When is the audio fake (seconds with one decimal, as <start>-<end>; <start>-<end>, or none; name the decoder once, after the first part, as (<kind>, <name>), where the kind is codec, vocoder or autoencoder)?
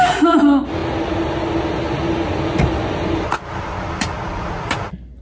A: none